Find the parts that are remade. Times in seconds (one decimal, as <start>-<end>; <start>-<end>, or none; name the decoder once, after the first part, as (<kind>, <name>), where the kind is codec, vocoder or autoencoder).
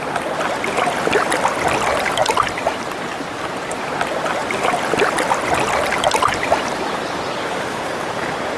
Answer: 2.2-3.7 (vocoder, BigVGAN v2); 4.4-8.6